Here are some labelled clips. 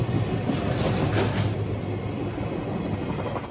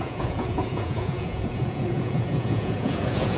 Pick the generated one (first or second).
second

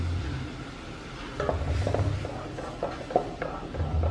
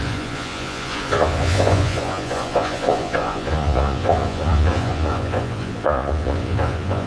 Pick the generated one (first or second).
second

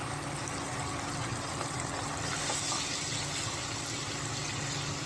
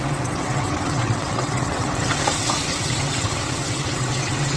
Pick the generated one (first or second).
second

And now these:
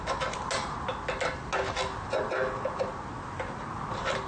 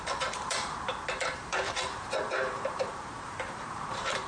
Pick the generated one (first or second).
second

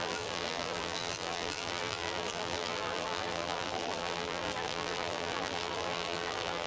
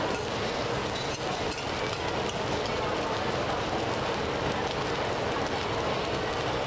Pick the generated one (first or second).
first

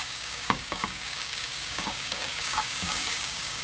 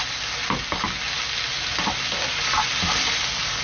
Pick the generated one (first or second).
first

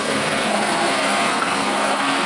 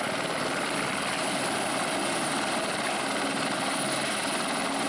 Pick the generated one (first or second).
first